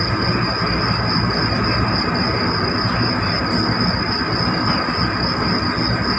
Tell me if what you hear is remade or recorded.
recorded